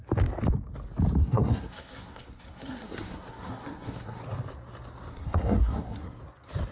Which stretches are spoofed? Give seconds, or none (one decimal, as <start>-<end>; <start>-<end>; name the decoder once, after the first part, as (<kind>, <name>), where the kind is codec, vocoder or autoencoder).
1.2-4.2 (codec, SNAC); 5.1-6.2